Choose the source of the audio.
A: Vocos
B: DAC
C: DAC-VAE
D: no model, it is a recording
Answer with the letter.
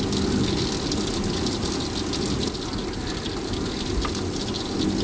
D